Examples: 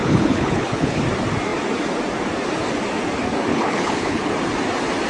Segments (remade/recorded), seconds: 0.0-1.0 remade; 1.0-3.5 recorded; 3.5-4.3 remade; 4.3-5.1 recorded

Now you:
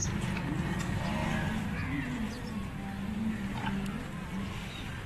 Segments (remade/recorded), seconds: 0.0-5.1 recorded

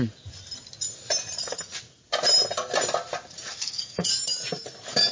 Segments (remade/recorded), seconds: 0.0-3.5 recorded; 3.5-4.1 remade; 4.1-5.1 recorded

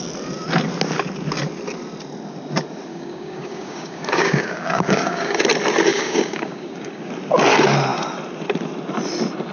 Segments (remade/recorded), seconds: 0.0-2.9 recorded; 2.9-5.4 remade; 5.4-5.9 recorded; 5.9-7.1 remade; 7.1-9.5 recorded